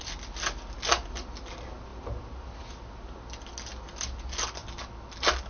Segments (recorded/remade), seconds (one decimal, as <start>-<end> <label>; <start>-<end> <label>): 0.0-5.5 recorded